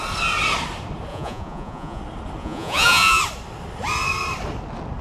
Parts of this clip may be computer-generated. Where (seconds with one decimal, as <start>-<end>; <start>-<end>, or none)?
1.1-2.0; 2.4-3.2